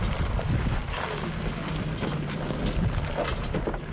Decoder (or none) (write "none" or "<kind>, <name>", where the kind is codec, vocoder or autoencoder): none